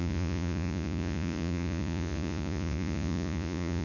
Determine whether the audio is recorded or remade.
remade